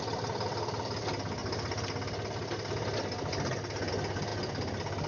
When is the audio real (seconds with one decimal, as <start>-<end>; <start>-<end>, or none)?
0.0-5.1